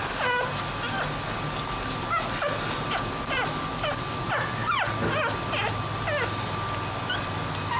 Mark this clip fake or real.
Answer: real